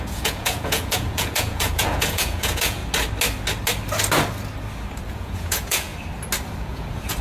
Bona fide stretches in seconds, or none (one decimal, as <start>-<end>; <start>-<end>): 2.8-5.1; 5.9-6.6